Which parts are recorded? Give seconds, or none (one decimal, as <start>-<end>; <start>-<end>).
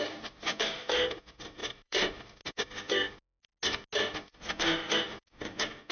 0.0-1.6; 2.3-5.9